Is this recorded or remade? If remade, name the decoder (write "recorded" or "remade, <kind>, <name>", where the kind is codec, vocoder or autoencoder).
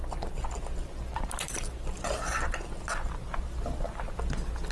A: recorded